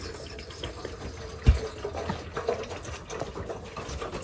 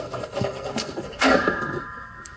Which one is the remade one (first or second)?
second